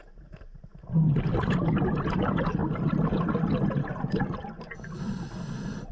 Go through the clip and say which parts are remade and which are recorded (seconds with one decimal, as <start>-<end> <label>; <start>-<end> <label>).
0.0-5.9 recorded